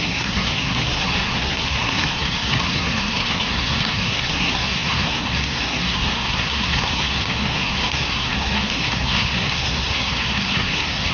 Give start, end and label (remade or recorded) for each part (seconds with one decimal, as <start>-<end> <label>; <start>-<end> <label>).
0.0-11.1 remade